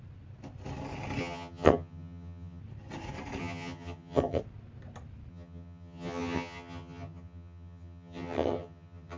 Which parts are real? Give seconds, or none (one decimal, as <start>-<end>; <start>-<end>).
0.0-1.2; 2.6-3.4; 4.4-5.3

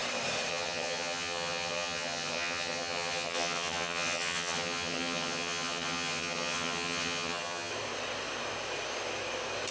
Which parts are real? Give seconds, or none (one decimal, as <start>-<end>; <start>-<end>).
0.0-0.5; 7.7-9.7

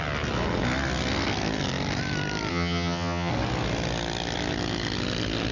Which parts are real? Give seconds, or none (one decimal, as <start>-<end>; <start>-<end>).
0.0-2.5; 3.3-5.5